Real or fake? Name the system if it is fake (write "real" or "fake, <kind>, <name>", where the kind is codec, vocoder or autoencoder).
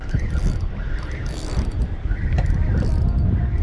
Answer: real